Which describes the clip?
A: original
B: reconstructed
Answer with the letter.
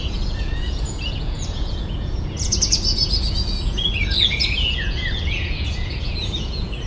B